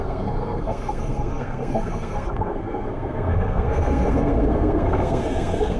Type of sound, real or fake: fake